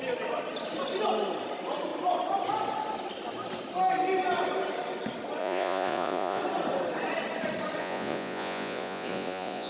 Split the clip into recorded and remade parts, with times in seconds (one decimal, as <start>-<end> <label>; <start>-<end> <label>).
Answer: 0.0-5.4 recorded; 5.4-6.4 remade; 6.4-7.8 recorded; 7.8-9.7 remade